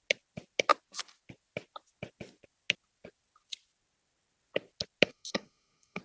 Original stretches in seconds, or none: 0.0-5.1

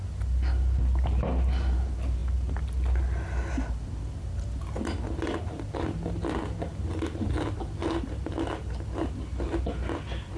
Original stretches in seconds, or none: 0.0-10.4

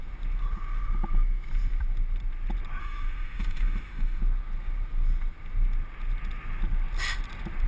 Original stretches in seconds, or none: 0.0-2.8; 4.2-7.7

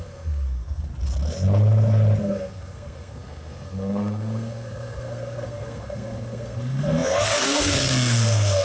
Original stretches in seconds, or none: 0.9-2.2

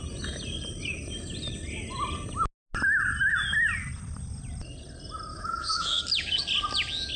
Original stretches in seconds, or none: 0.0-5.3; 6.0-7.2

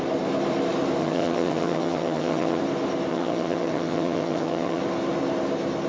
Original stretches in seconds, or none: 0.0-1.0; 2.6-3.1; 4.8-5.9